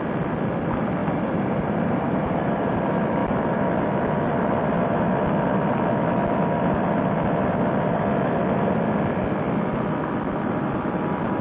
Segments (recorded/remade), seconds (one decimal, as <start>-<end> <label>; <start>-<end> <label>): 0.0-1.0 recorded; 1.0-2.8 remade; 2.8-11.4 recorded